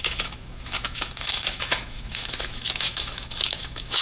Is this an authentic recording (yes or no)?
no